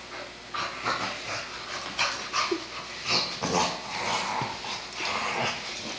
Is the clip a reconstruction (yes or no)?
no